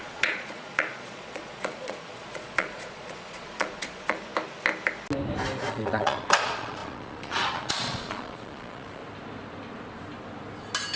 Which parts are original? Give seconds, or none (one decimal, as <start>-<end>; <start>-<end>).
4.3-5.7; 9.0-11.0